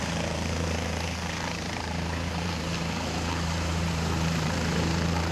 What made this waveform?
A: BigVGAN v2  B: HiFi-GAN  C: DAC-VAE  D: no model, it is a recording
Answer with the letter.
A